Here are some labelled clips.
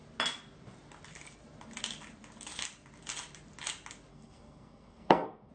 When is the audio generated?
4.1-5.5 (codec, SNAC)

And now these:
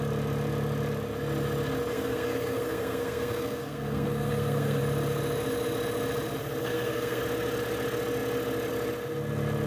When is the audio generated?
1.9-4.8 (codec, SNAC); 6.6-7.2

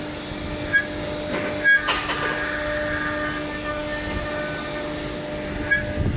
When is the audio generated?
none

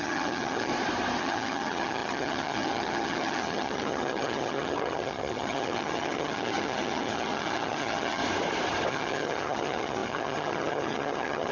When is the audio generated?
0.0-0.7 (vocoder, HiFi-GAN); 1.2-8.2; 8.9-11.5